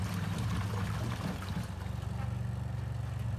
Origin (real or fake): real